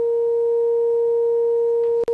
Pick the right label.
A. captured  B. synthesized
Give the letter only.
A